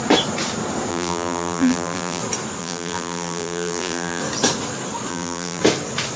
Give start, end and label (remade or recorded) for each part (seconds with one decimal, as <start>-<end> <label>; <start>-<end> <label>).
0.0-0.9 recorded; 0.9-2.2 remade; 2.2-2.6 recorded; 2.6-4.2 remade; 4.2-5.1 recorded; 5.1-5.6 remade; 5.6-6.2 recorded

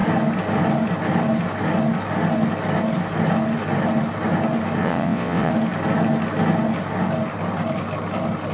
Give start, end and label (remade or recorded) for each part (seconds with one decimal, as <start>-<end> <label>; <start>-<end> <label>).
0.0-4.8 recorded; 4.8-5.5 remade; 5.5-8.5 recorded

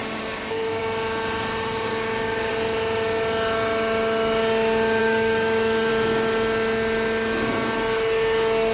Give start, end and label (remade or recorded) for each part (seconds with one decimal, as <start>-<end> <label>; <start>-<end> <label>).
0.0-0.8 remade; 0.8-1.9 recorded; 1.9-2.5 remade; 2.5-5.0 recorded; 5.0-5.9 remade; 5.9-8.7 recorded

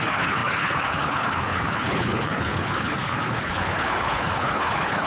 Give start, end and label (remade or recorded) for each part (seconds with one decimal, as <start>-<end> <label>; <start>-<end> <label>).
0.0-5.1 remade

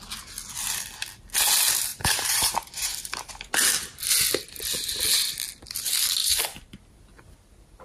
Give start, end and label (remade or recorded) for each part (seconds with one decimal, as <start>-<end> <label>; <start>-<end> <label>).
0.0-1.9 recorded; 1.9-3.3 remade; 3.3-6.2 recorded; 6.2-6.8 remade; 6.8-7.8 recorded